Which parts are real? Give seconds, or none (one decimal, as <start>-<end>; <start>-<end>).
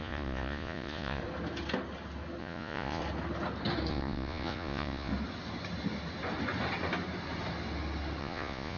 1.2-2.4; 3.0-3.9; 5.1-8.2